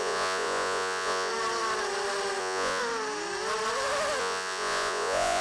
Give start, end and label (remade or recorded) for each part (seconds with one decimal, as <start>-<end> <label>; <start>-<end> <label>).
0.0-1.3 remade; 1.3-2.4 recorded; 2.4-2.8 remade; 2.8-4.2 recorded; 4.2-5.4 remade